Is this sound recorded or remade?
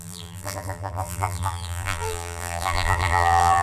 remade